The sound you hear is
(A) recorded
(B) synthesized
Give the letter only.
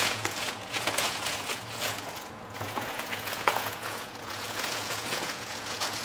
B